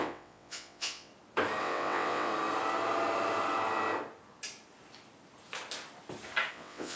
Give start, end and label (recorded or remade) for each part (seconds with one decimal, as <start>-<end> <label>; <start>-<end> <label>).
0.0-1.1 remade; 1.1-1.6 recorded; 1.6-2.3 remade; 2.3-6.5 recorded; 6.5-7.0 remade